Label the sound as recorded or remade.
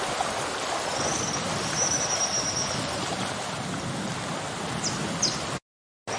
recorded